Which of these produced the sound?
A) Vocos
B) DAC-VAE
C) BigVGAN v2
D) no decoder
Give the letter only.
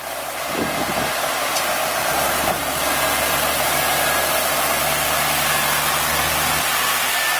D